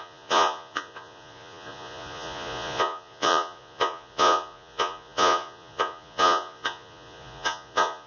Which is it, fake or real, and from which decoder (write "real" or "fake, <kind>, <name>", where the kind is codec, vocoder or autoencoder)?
fake, vocoder, Vocos